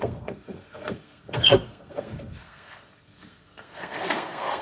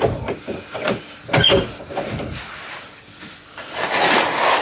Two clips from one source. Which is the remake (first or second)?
first